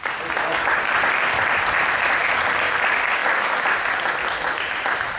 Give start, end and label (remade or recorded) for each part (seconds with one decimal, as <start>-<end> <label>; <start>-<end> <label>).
0.0-5.2 recorded